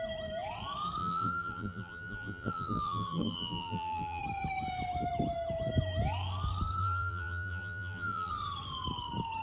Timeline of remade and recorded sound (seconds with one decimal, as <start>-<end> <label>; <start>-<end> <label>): 0.0-1.0 recorded; 1.0-4.2 remade; 4.2-6.8 recorded; 6.8-8.3 remade; 8.3-9.4 recorded